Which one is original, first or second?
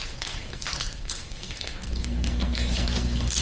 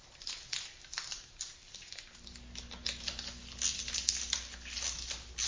second